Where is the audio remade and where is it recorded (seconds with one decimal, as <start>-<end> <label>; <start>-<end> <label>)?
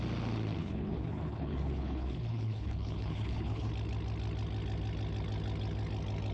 0.0-0.6 recorded; 0.6-3.7 remade; 3.7-6.3 recorded